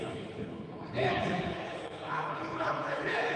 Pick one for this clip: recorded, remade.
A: remade